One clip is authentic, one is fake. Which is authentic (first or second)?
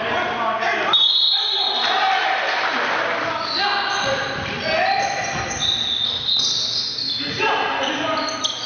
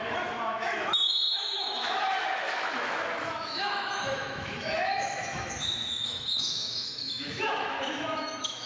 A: first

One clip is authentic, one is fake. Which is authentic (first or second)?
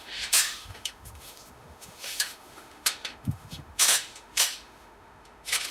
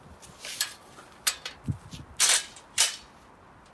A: second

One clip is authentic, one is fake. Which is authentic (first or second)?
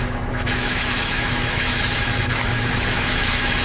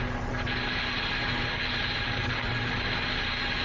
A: second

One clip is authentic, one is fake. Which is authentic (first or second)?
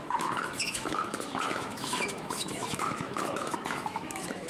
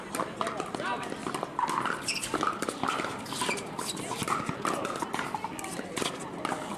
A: second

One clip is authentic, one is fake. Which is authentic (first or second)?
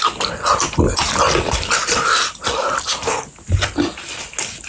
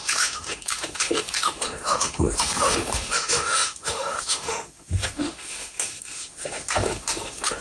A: first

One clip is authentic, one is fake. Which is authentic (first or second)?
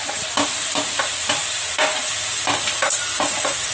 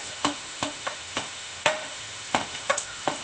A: first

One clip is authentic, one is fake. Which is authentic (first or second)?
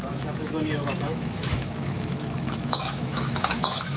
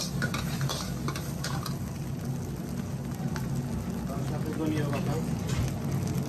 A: second